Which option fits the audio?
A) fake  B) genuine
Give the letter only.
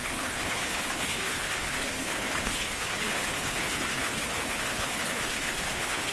A